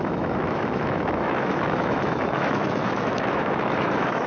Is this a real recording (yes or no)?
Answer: no